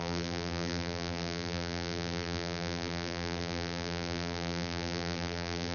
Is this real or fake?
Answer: fake